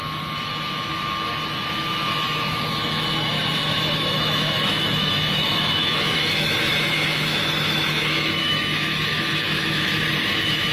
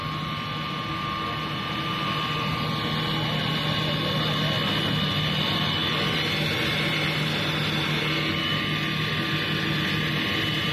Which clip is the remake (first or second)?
first